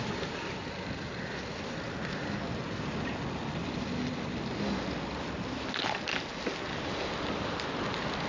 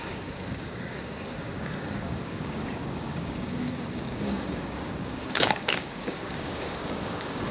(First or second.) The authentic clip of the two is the first